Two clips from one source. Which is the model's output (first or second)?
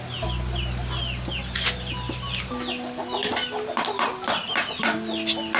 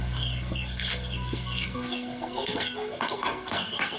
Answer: second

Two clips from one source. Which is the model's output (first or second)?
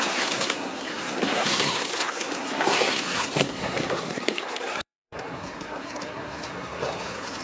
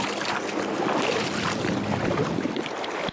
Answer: first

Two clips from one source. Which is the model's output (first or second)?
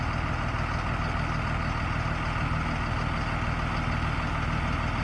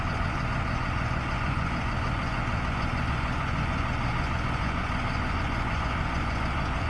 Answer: second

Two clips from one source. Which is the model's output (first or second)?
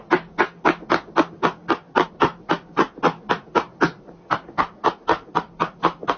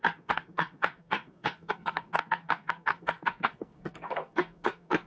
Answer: second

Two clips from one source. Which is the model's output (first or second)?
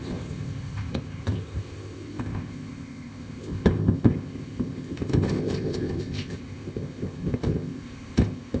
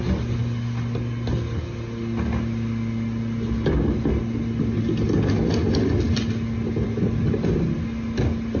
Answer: first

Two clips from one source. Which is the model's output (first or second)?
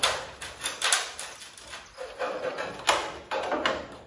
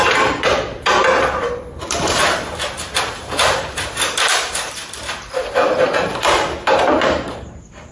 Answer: second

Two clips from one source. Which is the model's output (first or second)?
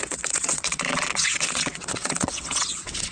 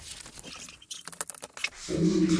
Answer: first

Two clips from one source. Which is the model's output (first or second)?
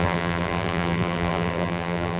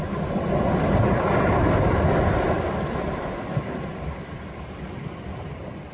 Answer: first